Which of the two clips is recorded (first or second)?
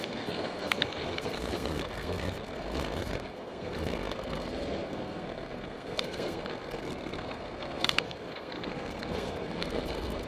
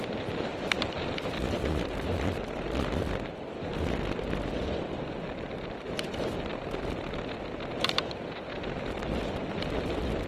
second